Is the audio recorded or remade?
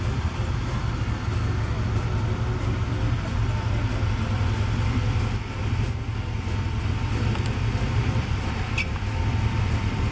recorded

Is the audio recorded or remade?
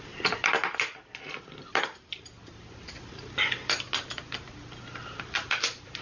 recorded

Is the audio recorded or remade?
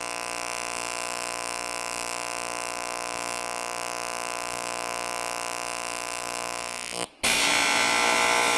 recorded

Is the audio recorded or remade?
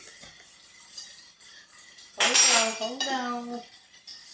recorded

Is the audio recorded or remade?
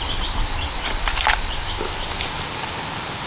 recorded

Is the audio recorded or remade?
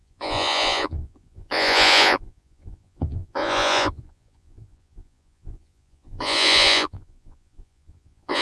remade